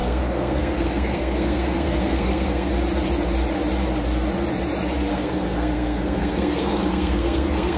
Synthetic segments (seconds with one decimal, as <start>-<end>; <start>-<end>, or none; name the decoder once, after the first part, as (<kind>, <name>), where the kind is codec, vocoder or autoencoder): 0.0-2.7 (codec, SNAC); 5.1-7.8